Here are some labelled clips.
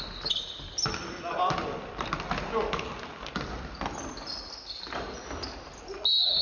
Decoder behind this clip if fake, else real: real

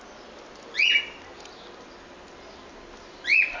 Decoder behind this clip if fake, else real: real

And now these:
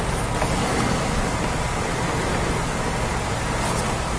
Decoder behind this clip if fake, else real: real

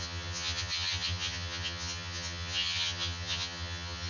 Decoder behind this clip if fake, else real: fake, vocoder, HiFi-GAN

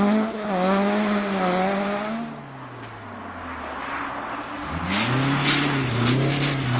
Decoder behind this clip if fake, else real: real